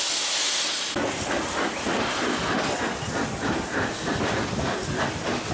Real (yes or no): yes